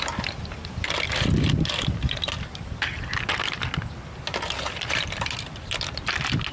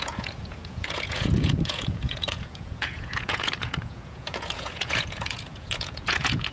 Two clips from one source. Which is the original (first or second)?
first